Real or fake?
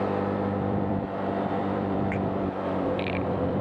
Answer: fake